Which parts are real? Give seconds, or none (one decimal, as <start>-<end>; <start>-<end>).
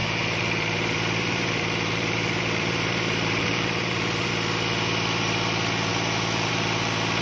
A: 4.3-7.2